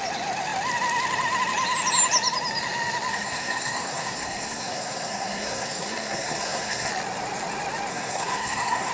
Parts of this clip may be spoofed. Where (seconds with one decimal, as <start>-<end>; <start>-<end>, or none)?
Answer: 3.1-6.9; 7.9-8.9